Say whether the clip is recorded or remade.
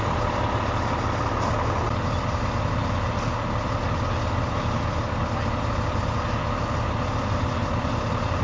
recorded